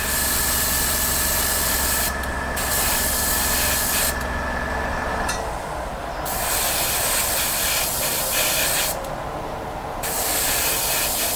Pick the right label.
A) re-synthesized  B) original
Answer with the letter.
B